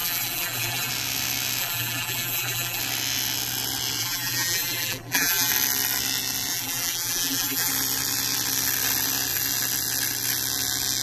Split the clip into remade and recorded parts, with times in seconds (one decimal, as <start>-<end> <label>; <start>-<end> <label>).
0.0-0.9 remade; 0.9-1.6 recorded; 1.6-2.8 remade; 2.8-4.0 recorded; 4.0-5.5 remade; 5.5-6.5 recorded; 6.5-7.7 remade; 7.7-11.0 recorded